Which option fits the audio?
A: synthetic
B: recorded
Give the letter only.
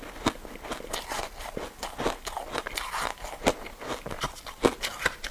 B